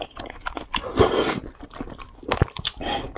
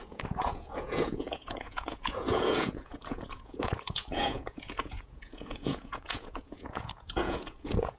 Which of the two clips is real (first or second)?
first